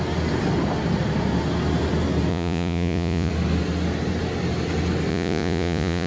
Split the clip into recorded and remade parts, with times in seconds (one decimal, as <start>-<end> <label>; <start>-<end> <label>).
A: 0.0-2.3 recorded; 2.3-3.3 remade; 3.3-5.1 recorded; 5.1-6.1 remade

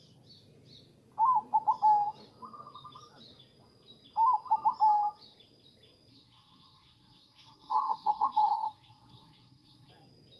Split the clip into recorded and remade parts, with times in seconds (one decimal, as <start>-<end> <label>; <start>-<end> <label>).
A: 0.0-6.1 recorded; 6.1-9.9 remade; 9.9-10.4 recorded

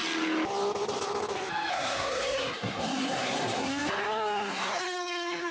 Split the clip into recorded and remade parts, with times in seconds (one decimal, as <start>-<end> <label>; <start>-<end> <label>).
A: 0.0-1.7 recorded; 1.7-5.5 remade

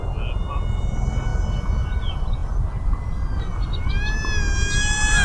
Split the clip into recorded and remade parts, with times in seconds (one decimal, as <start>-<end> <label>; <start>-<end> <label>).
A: 0.0-5.2 recorded

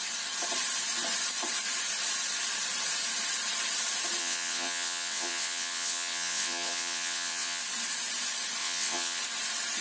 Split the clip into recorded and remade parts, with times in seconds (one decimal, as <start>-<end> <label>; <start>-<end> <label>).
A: 0.0-4.2 recorded; 4.2-7.6 remade; 7.6-8.6 recorded; 8.6-9.2 remade; 9.2-9.8 recorded

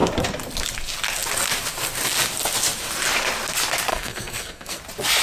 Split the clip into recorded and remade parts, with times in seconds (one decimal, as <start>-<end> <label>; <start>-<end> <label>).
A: 0.0-3.9 recorded; 3.9-4.8 remade; 4.8-5.2 recorded

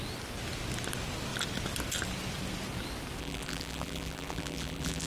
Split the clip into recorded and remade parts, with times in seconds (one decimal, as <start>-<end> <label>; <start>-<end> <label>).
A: 0.0-3.2 recorded; 3.2-5.1 remade

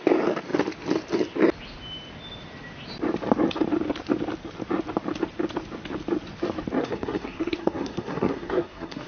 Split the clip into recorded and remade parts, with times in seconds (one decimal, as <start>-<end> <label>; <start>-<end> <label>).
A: 0.0-6.8 recorded; 6.8-9.1 remade